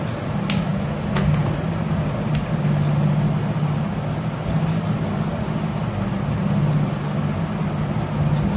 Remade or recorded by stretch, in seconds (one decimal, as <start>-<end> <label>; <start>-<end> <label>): 0.0-8.6 recorded